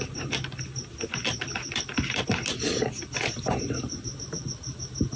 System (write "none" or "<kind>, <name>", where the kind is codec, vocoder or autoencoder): none